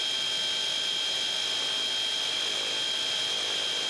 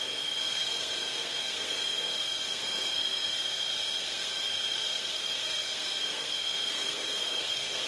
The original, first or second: first